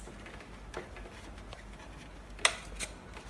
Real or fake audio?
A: real